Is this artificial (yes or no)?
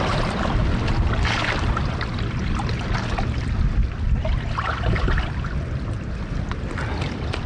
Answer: no